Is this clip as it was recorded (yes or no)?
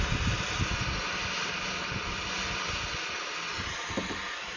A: yes